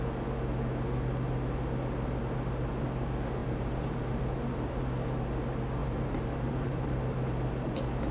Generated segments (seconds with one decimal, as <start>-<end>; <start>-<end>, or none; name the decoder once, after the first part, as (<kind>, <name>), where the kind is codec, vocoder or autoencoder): 3.4-4.8 (vocoder, BigVGAN v2); 5.8-7.3